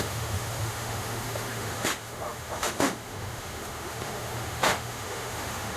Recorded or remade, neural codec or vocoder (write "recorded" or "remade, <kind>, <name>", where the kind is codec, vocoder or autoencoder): remade, autoencoder, DAC-VAE